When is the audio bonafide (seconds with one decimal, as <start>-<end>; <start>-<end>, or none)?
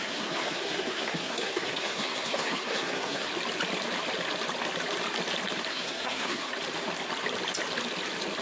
3.3-5.7; 6.5-8.4